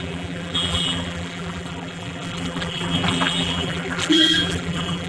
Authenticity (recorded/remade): remade